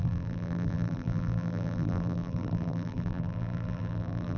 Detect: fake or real fake